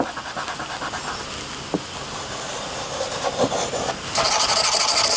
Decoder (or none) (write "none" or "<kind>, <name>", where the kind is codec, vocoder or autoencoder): none